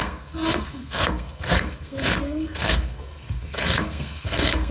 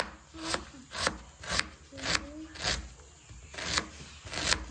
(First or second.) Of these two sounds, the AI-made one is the first